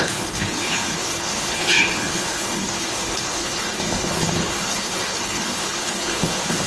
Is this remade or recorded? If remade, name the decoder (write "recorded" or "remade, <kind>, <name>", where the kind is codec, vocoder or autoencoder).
remade, codec, HILCodec